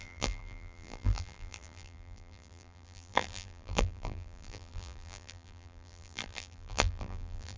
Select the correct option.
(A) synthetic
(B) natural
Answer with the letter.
A